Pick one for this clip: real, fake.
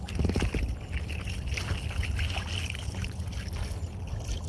real